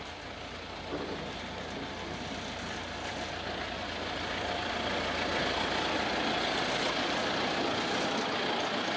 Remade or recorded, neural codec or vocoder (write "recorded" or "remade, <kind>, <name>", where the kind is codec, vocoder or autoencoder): recorded